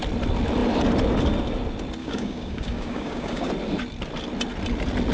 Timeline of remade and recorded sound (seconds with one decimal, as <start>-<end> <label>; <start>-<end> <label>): 0.0-2.0 recorded; 2.0-3.5 remade; 3.5-5.1 recorded